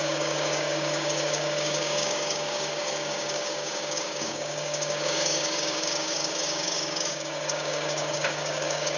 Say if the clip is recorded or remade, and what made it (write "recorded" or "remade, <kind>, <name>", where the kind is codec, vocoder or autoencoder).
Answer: remade, codec, DAC